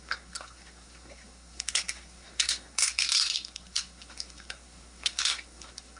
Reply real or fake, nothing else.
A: fake